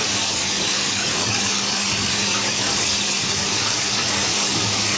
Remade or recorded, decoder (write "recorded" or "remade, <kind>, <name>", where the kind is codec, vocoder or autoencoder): remade, codec, DAC